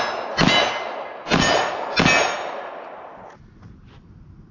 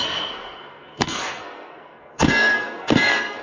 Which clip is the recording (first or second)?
first